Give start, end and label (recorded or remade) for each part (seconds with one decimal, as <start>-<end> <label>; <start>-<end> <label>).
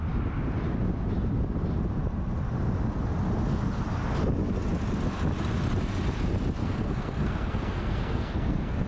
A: 0.0-6.6 recorded; 6.6-8.9 remade